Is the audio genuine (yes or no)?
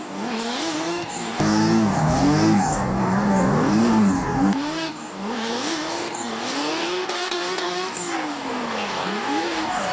no